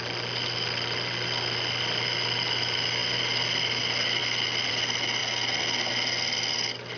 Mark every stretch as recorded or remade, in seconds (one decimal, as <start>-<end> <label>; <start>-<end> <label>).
0.0-7.0 recorded